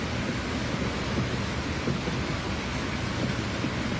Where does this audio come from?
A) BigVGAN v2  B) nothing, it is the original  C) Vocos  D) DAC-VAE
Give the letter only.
B